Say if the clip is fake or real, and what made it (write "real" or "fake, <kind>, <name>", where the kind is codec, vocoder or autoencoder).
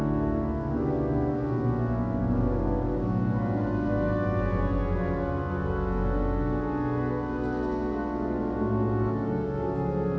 real